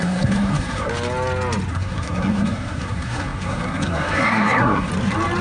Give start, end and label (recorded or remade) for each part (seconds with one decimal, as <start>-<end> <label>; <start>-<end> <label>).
0.0-0.9 remade; 0.9-1.7 recorded; 1.7-4.9 remade; 4.9-5.4 recorded